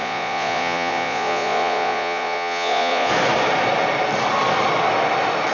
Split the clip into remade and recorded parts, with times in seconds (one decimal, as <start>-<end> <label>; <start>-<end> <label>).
0.0-3.1 remade; 3.1-5.5 recorded